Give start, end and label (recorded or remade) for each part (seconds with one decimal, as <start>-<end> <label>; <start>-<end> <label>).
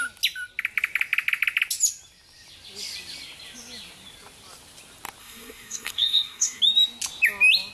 0.0-5.2 recorded; 5.2-6.6 remade; 6.6-7.7 recorded